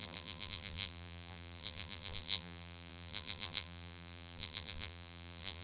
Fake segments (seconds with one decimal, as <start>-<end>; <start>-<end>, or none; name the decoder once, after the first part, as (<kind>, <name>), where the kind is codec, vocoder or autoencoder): 0.0-5.6 (vocoder, BigVGAN v2)